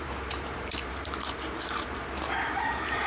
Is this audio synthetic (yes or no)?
yes